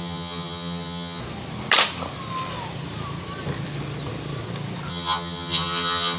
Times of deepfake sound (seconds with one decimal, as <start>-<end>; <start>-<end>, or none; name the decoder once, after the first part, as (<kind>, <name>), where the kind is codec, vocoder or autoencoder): 0.0-1.2 (vocoder, HiFi-GAN); 4.9-6.2